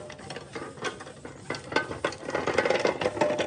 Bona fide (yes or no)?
yes